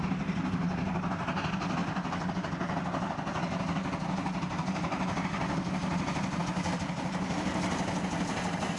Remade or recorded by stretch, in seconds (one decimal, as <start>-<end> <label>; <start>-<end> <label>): 0.0-1.8 recorded; 1.8-2.3 remade; 2.3-8.8 recorded